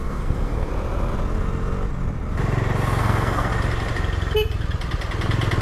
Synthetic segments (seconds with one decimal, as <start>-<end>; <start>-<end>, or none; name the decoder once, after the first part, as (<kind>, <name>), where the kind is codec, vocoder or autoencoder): 0.0-0.7 (codec, SNAC); 3.0-3.5